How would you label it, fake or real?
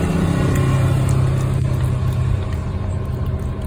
real